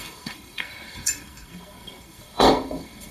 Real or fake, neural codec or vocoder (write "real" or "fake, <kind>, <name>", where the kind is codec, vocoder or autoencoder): fake, codec, SNAC